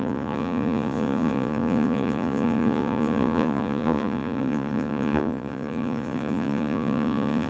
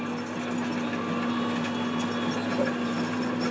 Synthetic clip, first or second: first